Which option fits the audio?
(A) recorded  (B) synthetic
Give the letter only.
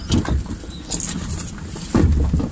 A